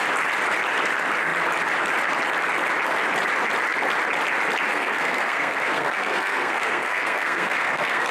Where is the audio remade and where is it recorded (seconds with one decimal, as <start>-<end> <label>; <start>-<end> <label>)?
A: 0.0-4.7 recorded; 4.7-8.1 remade